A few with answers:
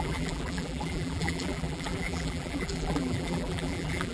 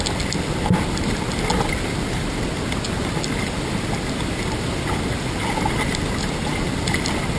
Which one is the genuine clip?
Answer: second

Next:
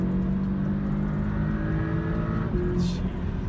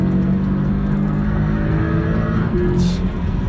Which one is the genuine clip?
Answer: first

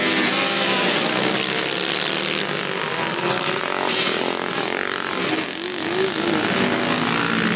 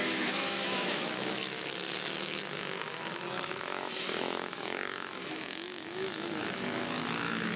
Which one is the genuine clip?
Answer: first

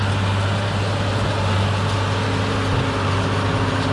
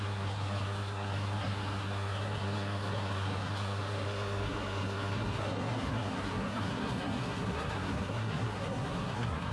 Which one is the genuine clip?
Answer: first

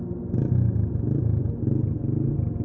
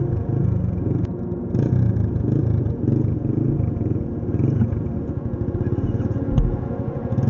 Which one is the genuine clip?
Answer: first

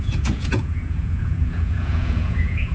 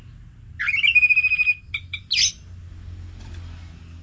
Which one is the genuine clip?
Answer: second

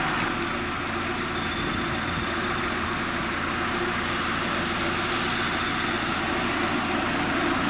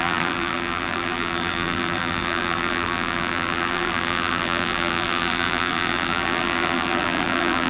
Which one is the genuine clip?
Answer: first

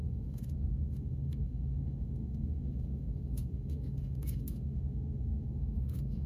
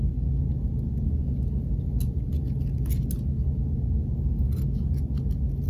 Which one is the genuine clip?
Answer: second